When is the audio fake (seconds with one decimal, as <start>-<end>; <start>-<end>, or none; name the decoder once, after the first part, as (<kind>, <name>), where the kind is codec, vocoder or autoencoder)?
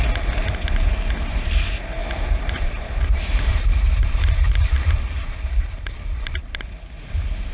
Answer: 2.0-5.7 (vocoder, BigVGAN v2)